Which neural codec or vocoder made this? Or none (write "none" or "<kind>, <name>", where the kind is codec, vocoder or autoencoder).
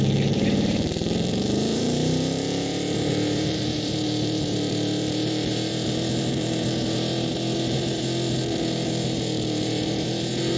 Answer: vocoder, BigVGAN v2